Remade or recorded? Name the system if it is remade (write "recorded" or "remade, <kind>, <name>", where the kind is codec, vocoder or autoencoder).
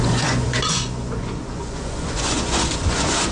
remade, vocoder, Vocos